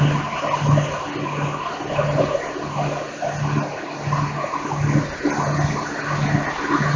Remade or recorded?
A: recorded